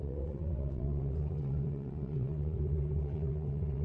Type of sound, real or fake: fake